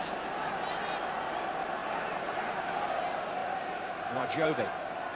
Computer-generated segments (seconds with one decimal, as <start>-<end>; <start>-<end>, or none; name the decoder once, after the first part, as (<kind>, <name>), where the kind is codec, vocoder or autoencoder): 1.8-2.4 (vocoder, BigVGAN v2); 3.4-4.7